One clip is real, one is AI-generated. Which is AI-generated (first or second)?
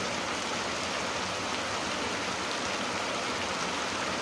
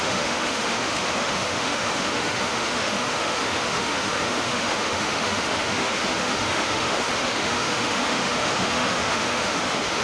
second